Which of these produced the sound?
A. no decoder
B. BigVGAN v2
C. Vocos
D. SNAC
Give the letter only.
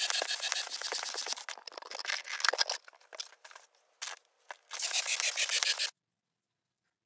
A